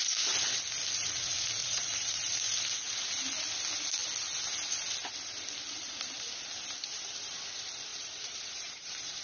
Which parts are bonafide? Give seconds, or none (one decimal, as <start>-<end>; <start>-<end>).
0.0-1.6; 2.9-7.9